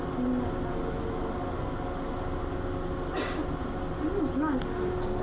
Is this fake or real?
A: real